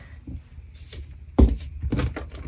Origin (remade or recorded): recorded